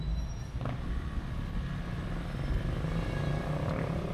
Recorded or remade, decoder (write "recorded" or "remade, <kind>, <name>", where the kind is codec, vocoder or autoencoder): recorded